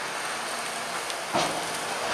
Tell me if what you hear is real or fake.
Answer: real